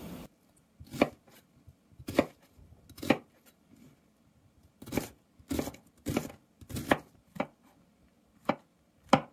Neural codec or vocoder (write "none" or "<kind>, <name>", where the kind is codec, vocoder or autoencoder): none